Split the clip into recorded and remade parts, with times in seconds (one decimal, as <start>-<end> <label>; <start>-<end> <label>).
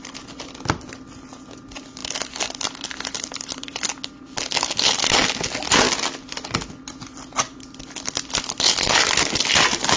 0.0-10.0 recorded